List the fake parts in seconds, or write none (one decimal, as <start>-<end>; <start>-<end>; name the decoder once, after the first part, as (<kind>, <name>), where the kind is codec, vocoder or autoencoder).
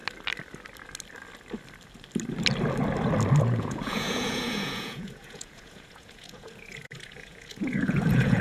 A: 3.4-8.4 (vocoder, Vocos)